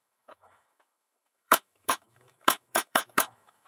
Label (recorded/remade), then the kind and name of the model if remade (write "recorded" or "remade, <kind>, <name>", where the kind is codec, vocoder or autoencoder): remade, autoencoder, DAC-VAE